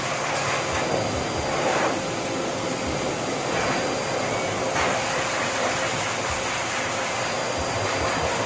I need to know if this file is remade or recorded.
recorded